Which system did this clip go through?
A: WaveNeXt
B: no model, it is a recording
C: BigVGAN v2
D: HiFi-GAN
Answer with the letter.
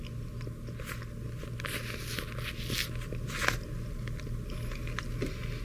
B